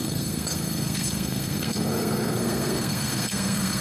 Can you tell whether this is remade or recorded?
remade